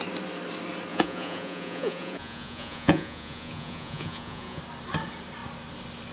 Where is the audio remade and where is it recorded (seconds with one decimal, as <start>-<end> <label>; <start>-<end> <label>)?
0.0-0.9 recorded; 0.9-4.6 remade; 4.6-6.1 recorded